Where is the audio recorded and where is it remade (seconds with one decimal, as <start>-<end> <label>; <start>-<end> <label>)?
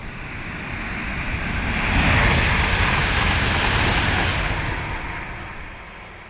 0.0-6.3 recorded